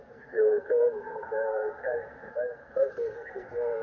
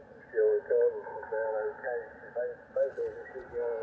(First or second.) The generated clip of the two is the first